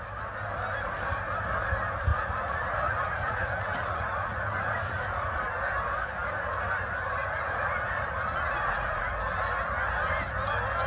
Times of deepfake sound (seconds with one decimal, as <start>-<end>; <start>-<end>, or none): 2.1-5.4; 7.2-9.1